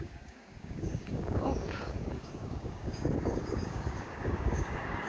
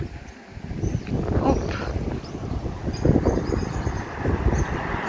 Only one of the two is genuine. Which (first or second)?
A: second